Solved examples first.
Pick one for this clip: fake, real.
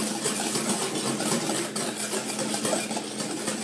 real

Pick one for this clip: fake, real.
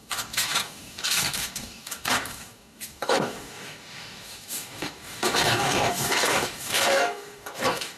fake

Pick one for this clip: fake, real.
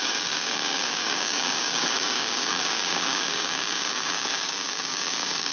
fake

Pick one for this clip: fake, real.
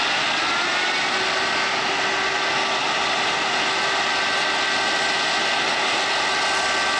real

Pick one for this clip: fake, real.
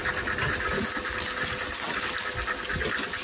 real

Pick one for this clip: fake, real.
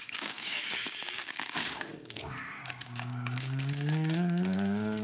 fake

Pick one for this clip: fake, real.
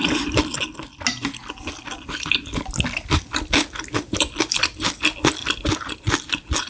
real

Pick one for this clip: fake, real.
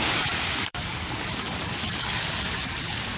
fake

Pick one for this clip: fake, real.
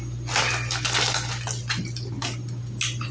real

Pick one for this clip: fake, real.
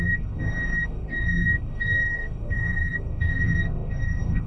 fake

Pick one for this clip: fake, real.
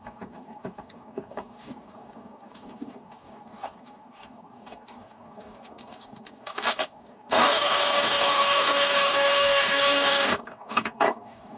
fake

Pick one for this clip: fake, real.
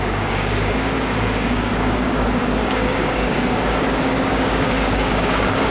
fake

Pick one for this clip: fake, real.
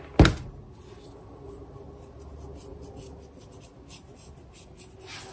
real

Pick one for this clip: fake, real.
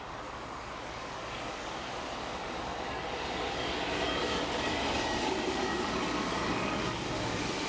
fake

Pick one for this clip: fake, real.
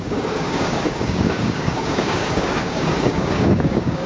fake